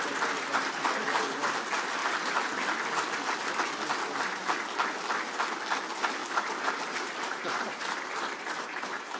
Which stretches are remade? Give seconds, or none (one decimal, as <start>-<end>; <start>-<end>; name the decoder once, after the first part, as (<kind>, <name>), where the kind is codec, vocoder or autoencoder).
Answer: 6.2-9.2 (vocoder, BigVGAN v2)